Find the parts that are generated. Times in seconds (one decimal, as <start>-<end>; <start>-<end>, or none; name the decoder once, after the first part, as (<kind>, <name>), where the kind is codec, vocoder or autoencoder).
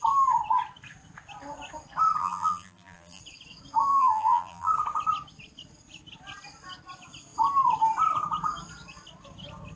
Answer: 2.2-3.2 (vocoder, BigVGAN v2); 3.9-4.7